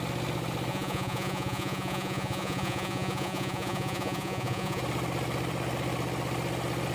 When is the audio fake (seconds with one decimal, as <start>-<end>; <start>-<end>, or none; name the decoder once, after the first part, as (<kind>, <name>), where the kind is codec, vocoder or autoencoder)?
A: 0.7-4.8 (vocoder, Vocos)